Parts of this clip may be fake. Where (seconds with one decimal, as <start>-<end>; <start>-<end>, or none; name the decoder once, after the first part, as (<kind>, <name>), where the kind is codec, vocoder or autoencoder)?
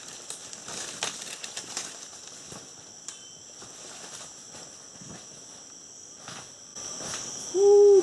none